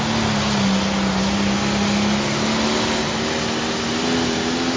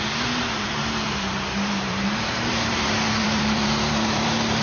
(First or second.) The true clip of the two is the first